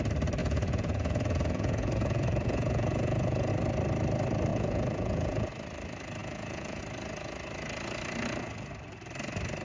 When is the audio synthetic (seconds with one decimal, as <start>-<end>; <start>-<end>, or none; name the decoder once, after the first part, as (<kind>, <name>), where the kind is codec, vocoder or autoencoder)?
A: 0.4-3.5 (vocoder, Vocos); 4.5-5.5; 6.2-6.8